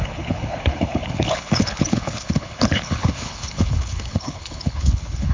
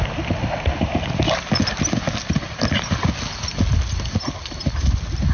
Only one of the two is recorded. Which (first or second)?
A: second